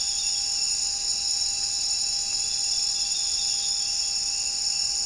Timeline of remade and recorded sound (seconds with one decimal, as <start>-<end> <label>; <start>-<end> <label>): 0.0-5.1 recorded